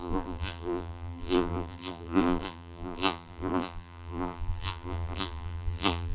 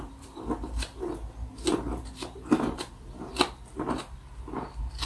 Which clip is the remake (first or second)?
first